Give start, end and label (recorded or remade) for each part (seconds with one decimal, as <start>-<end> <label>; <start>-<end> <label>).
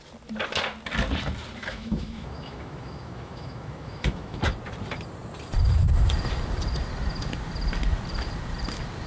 0.0-1.6 recorded; 1.6-4.4 remade; 4.4-9.1 recorded